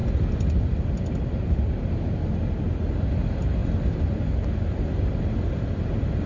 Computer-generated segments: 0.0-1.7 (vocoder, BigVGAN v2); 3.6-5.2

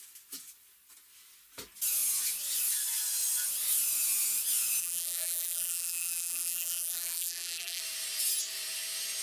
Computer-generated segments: 4.8-7.8 (vocoder, BigVGAN v2)

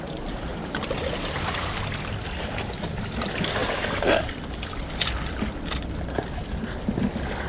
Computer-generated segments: 0.5-1.3 (vocoder, BigVGAN v2); 3.6-4.3

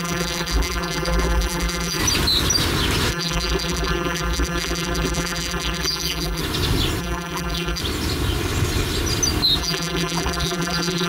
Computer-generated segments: 0.0-2.0 (vocoder, BigVGAN v2); 3.1-6.4; 7.0-7.8; 9.6-11.1

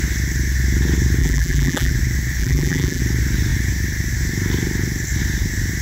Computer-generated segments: 1.2-1.9 (vocoder, BigVGAN v2); 2.4-3.0

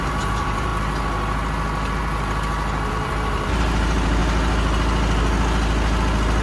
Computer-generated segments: 0.0-0.7 (vocoder, BigVGAN v2); 2.9-4.2

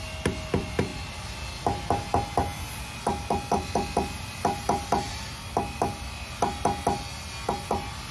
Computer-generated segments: none

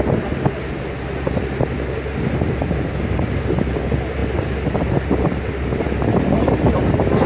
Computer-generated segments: none